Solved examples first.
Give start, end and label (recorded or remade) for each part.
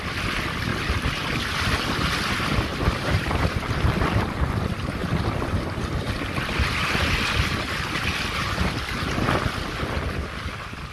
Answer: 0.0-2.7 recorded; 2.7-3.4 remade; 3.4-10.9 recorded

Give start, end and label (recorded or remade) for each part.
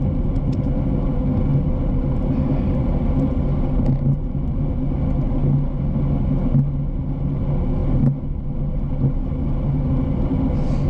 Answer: 0.0-10.9 recorded